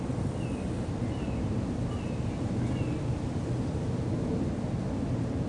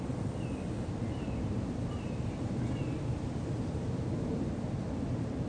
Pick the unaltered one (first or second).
first